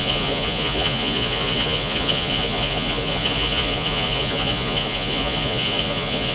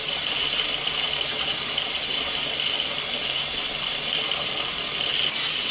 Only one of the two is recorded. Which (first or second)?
second